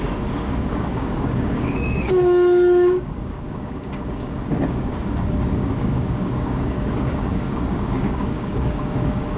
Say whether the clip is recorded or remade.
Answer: remade